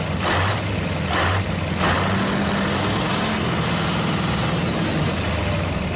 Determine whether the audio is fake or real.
real